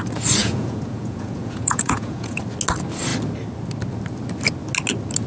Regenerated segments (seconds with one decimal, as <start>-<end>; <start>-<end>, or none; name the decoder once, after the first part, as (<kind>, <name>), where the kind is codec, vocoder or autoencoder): 0.4-2.4 (vocoder, Vocos)